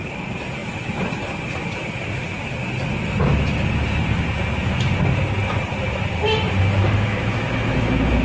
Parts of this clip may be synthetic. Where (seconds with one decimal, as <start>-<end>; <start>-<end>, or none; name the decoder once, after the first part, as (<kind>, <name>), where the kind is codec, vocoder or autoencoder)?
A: 6.8-8.2 (autoencoder, DAC-VAE)